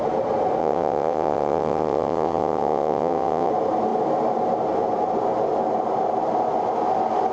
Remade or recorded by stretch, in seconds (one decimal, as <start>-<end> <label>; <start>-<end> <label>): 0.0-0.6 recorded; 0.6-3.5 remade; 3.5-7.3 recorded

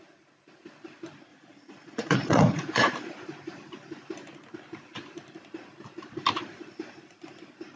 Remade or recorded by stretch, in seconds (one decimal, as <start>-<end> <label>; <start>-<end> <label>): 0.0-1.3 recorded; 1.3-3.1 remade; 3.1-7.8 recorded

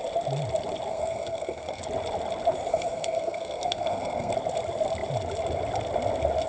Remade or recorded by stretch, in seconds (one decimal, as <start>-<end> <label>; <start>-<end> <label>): 0.0-0.9 recorded; 0.9-1.8 remade; 1.8-2.7 recorded; 2.7-4.3 remade; 4.3-6.5 recorded

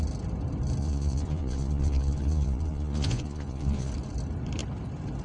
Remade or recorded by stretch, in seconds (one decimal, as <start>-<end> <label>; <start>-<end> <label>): 0.0-0.8 recorded; 0.8-3.9 remade; 3.9-5.2 recorded

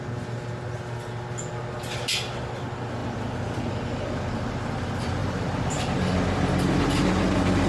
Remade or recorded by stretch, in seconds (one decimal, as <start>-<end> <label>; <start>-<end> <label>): 0.0-3.0 recorded; 3.0-3.7 remade; 3.7-5.2 recorded; 5.2-5.8 remade; 5.8-7.7 recorded